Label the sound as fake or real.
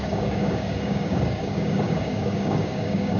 fake